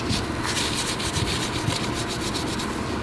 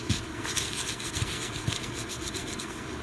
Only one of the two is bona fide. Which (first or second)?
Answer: first